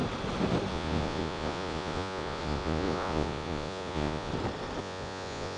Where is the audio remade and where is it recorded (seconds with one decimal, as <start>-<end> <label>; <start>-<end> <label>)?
0.0-0.7 recorded; 0.7-4.3 remade; 4.3-4.8 recorded; 4.8-5.6 remade